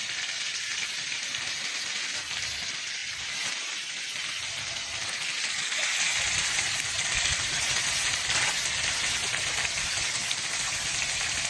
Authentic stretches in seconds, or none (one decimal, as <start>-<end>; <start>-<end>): 0.0-11.5